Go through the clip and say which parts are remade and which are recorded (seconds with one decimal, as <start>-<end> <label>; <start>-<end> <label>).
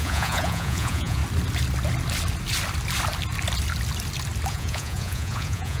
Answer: 0.0-1.2 remade; 1.2-4.5 recorded; 4.5-5.8 remade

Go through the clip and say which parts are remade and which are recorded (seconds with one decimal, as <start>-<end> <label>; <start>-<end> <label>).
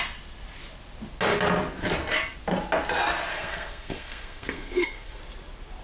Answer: 0.0-3.3 recorded; 3.3-5.2 remade; 5.2-5.8 recorded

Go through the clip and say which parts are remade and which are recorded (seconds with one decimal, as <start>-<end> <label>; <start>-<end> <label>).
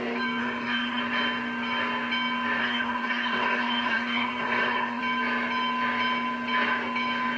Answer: 0.0-0.4 recorded; 0.4-1.0 remade; 1.0-2.6 recorded; 2.6-5.0 remade; 5.0-7.4 recorded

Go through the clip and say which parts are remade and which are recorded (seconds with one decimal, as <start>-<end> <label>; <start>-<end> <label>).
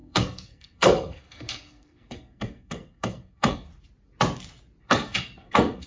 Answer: 0.0-3.7 remade; 3.7-4.8 recorded; 4.8-5.9 remade